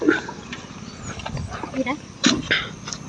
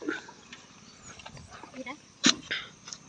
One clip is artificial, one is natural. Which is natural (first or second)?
first